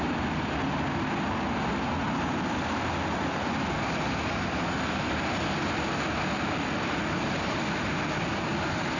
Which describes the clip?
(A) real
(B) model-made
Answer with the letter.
A